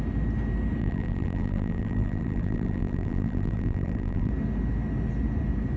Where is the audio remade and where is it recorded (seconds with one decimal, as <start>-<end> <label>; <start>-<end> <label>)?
0.0-0.8 recorded; 0.8-4.3 remade; 4.3-5.8 recorded